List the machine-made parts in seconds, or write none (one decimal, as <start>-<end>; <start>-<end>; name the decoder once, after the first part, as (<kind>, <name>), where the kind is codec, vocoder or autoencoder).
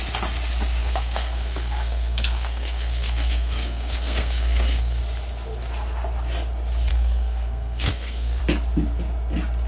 0.8-5.0 (codec, SNAC); 6.9-8.4